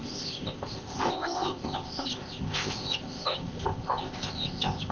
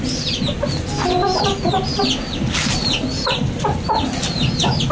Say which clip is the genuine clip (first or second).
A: second